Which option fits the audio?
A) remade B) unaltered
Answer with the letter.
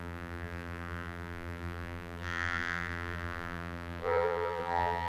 A